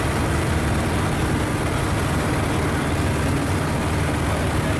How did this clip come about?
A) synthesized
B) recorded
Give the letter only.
B